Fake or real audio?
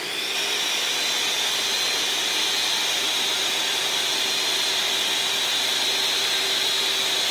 real